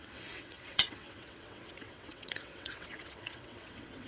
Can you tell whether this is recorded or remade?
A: remade